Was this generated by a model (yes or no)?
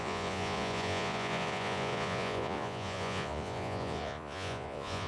yes